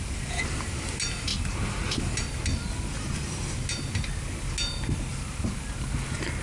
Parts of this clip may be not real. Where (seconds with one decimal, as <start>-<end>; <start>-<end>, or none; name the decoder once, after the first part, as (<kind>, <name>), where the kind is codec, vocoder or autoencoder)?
none